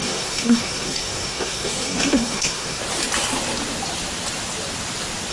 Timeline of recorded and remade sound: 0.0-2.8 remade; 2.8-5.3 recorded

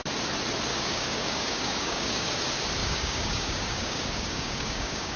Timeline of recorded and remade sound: 0.0-0.7 recorded; 0.7-2.3 remade; 2.3-2.8 recorded; 2.8-5.2 remade

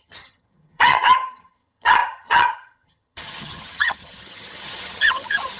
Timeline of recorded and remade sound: 0.0-5.6 remade

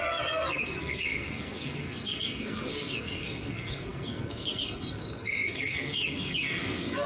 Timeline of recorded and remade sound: 0.0-7.1 remade

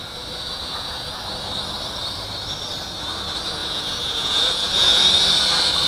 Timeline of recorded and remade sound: 0.0-0.5 recorded; 0.5-1.0 remade; 1.0-3.6 recorded; 3.6-5.0 remade; 5.0-5.9 recorded

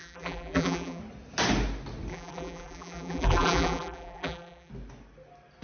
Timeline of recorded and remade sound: 0.0-1.0 remade; 1.0-2.1 recorded; 2.1-4.7 remade; 4.7-5.6 recorded